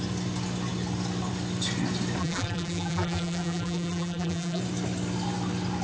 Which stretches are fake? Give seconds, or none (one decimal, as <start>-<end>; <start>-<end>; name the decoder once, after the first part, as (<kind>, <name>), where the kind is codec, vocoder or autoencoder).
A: 2.2-4.6 (vocoder, BigVGAN v2)